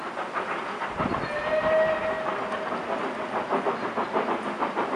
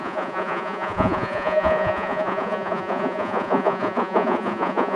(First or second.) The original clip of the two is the first